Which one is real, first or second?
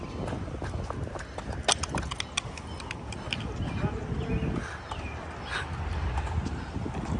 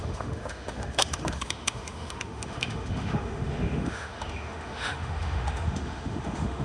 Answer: first